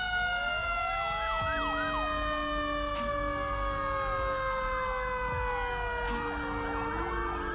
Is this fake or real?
real